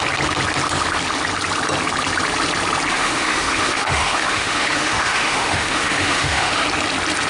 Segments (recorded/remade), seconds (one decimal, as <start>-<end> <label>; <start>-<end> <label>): 0.0-2.9 recorded; 2.9-6.6 remade; 6.6-7.3 recorded